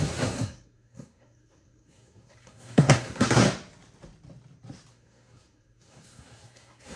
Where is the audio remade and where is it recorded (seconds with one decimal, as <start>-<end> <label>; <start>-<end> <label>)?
0.0-3.4 remade; 3.4-4.9 recorded; 4.9-7.0 remade